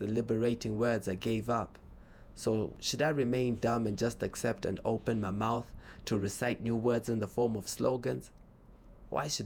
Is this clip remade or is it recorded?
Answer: remade